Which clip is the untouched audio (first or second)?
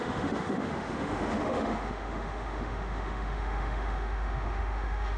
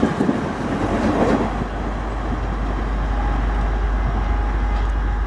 second